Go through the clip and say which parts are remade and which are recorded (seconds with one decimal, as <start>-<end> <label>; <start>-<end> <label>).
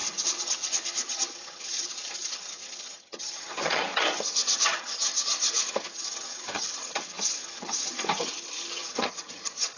0.0-9.8 remade